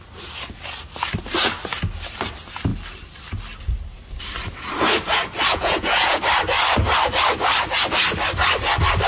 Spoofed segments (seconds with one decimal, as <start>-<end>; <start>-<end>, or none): 5.5-6.2